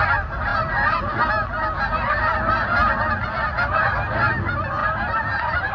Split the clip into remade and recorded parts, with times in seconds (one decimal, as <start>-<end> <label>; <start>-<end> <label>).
0.0-4.8 recorded; 4.8-5.7 remade